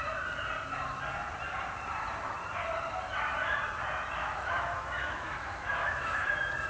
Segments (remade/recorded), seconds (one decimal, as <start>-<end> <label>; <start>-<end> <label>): 0.0-4.2 recorded; 4.2-6.3 remade; 6.3-6.7 recorded